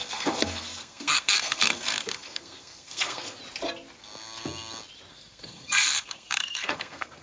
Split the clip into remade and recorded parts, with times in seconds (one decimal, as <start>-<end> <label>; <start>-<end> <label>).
0.0-3.4 remade; 3.4-5.1 recorded; 5.1-7.2 remade